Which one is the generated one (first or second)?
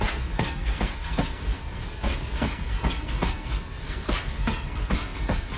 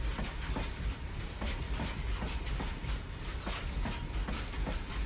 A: first